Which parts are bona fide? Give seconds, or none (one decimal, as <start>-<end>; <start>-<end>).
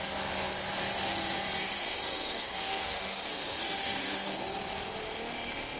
0.0-1.6; 4.6-5.8